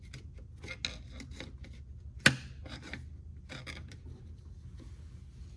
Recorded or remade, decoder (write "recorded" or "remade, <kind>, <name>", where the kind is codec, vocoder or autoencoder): recorded